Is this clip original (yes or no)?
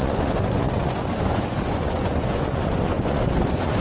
no